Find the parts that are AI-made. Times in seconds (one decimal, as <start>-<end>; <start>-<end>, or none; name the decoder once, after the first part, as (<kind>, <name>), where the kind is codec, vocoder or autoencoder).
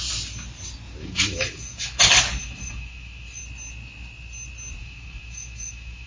1.0-2.0 (autoencoder, DAC-VAE); 2.4-3.4; 4.8-6.1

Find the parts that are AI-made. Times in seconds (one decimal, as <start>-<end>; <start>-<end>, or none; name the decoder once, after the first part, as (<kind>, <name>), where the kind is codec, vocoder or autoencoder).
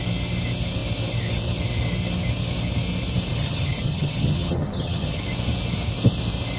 3.3-5.2 (vocoder, HiFi-GAN)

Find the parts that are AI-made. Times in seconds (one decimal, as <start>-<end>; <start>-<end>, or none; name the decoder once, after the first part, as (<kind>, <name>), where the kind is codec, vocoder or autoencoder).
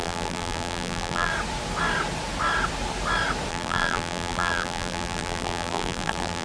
0.0-1.3 (vocoder, BigVGAN v2); 3.5-6.4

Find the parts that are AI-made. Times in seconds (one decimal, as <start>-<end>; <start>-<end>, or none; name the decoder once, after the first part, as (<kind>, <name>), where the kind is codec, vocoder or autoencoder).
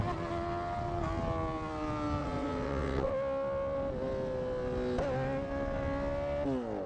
2.2-3.1 (vocoder, WaveNeXt)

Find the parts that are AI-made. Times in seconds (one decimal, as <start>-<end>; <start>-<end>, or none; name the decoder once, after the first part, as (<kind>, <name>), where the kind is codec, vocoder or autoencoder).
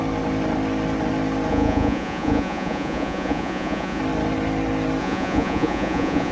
1.5-4.0 (vocoder, Vocos); 5.0-6.3